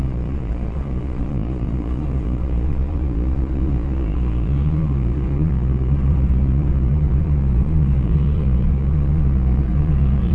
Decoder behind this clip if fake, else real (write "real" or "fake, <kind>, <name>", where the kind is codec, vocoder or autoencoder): fake, vocoder, Vocos